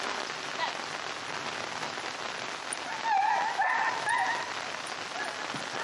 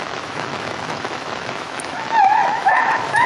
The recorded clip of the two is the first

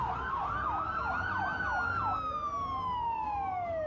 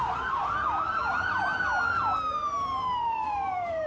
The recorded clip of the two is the first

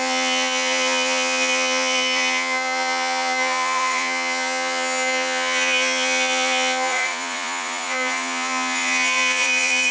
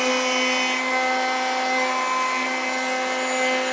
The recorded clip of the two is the second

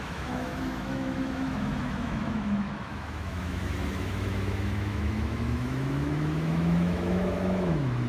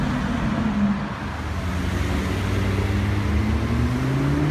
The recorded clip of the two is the second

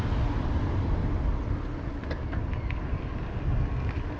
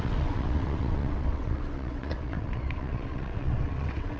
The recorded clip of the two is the first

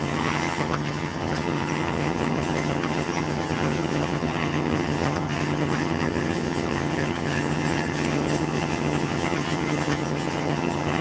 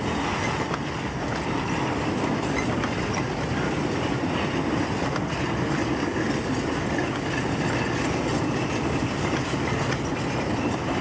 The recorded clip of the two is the second